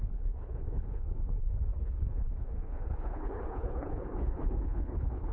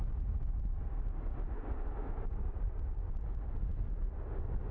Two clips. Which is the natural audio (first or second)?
second